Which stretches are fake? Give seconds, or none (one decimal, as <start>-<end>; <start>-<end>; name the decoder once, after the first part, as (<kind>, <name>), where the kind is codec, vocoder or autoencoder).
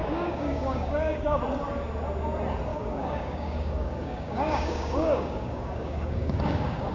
0.0-1.4 (codec, DAC); 2.7-6.9